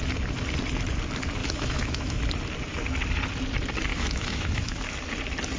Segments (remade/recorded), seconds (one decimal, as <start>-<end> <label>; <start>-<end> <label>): 0.0-1.4 recorded; 1.4-2.2 remade; 2.2-3.9 recorded; 3.9-4.8 remade; 4.8-5.6 recorded